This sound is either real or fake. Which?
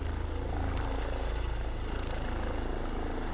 real